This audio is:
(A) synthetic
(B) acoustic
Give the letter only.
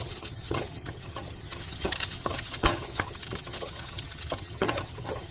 A